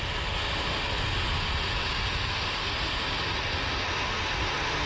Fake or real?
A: real